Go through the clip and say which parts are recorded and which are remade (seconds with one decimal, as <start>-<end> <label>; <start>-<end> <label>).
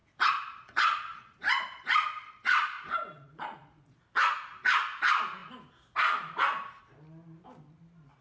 0.0-4.0 remade; 4.0-8.2 recorded